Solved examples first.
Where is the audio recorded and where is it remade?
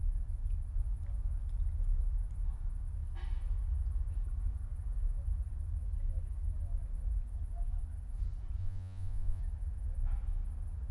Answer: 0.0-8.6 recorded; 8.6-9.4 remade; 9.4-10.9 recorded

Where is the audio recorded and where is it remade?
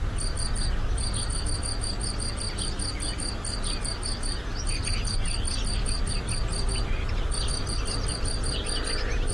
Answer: 0.0-9.3 recorded